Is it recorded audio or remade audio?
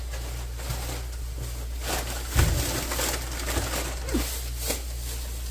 recorded